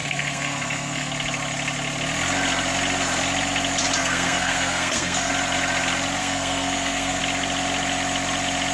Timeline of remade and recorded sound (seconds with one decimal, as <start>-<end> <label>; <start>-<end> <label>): 0.0-1.1 remade; 1.1-4.0 recorded; 4.0-5.3 remade; 5.3-6.2 recorded; 6.2-7.2 remade; 7.2-8.7 recorded